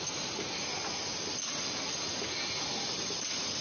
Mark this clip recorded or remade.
recorded